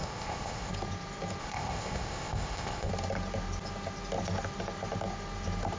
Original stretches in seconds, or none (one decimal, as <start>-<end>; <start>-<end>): 0.7-1.4; 2.9-5.8